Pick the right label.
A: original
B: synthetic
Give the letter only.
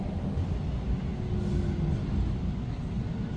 A